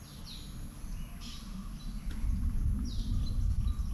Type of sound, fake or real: real